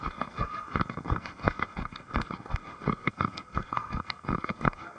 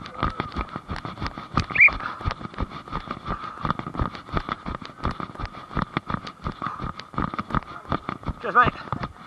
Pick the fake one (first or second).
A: first